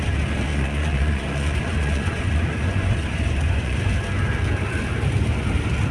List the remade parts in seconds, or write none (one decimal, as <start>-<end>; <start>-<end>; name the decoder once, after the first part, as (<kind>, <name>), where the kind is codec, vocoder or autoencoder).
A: 0.5-3.8 (vocoder, Vocos)